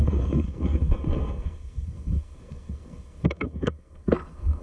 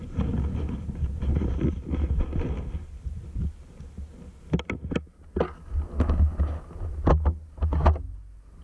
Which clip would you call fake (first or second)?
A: first